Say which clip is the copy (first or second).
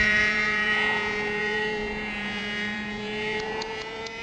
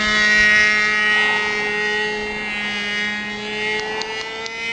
first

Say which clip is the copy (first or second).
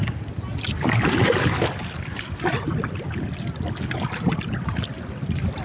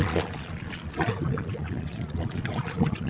second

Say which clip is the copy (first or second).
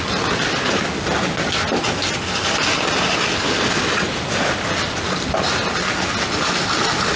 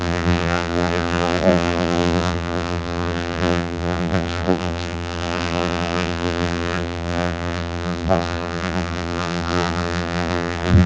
second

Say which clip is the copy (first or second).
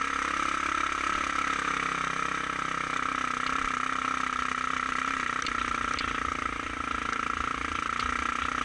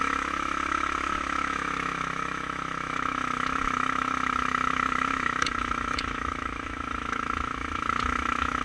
second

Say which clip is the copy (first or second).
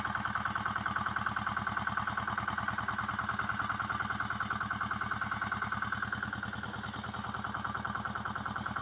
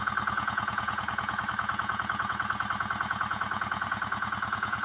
second